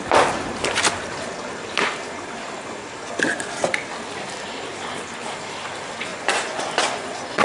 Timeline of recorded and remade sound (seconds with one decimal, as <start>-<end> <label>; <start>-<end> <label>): 0.0-6.1 recorded; 6.1-7.4 remade